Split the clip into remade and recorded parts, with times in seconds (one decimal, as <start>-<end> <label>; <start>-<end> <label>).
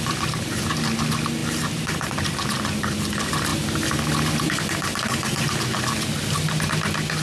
0.0-7.2 recorded